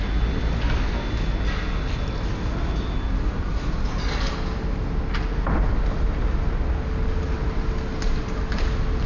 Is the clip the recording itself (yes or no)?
yes